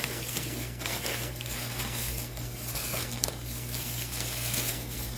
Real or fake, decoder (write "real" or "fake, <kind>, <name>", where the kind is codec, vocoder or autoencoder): fake, codec, SNAC